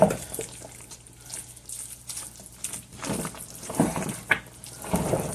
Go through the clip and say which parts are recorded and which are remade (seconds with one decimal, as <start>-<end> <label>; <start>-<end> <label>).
0.0-5.3 recorded